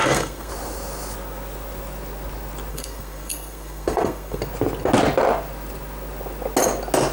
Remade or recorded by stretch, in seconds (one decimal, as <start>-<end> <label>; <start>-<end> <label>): 0.0-0.5 remade; 0.5-2.7 recorded; 2.7-4.4 remade; 4.4-7.1 recorded